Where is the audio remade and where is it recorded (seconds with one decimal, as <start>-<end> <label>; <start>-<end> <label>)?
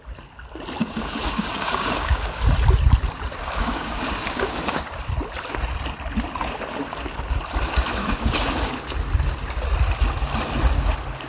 0.0-0.8 recorded; 0.8-2.4 remade; 2.4-3.4 recorded; 3.4-4.9 remade; 4.9-8.0 recorded; 8.0-8.7 remade; 8.7-11.3 recorded